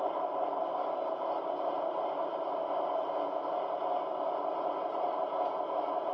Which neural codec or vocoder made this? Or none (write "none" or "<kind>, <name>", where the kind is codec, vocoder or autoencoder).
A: none